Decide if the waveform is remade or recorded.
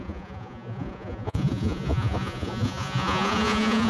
remade